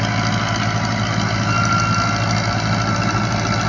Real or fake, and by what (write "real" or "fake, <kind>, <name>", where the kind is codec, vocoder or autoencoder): real